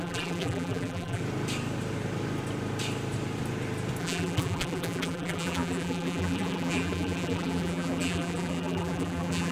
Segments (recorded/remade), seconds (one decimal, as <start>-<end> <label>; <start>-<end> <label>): 0.0-1.2 remade; 1.2-4.0 recorded; 4.0-9.5 remade